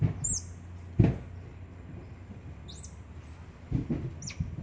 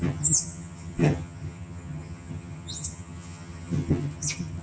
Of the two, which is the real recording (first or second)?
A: first